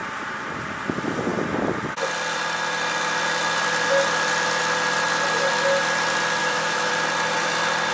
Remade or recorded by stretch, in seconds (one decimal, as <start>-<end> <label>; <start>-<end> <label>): 0.0-6.4 recorded; 6.4-6.9 remade; 6.9-7.9 recorded